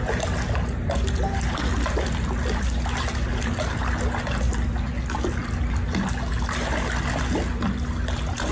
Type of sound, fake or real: real